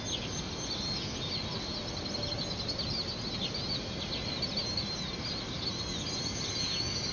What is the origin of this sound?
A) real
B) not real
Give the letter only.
A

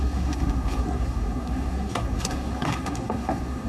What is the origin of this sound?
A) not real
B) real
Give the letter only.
A